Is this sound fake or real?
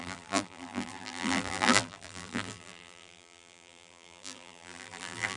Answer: fake